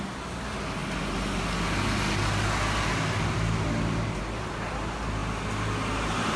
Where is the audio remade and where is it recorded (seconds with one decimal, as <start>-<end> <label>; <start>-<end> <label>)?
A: 0.0-6.4 recorded